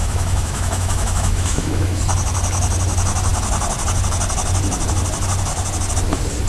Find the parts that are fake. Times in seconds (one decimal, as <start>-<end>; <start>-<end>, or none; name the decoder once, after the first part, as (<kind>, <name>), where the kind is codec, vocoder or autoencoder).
0.0-2.0 (autoencoder, DAC-VAE)